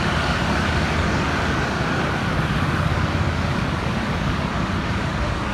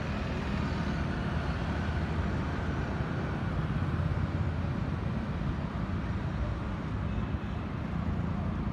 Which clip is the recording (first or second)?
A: second